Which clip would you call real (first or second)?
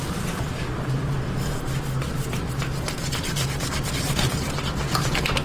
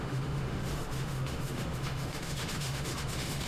first